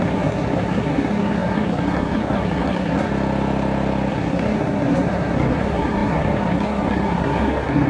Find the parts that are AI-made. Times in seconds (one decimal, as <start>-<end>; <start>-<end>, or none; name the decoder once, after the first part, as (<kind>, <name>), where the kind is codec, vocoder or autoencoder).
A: 0.0-3.1 (codec, SNAC); 4.1-7.9